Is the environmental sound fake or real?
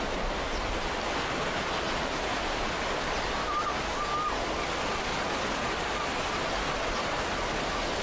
real